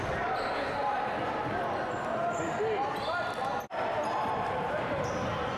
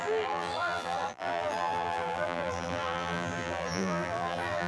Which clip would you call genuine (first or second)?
first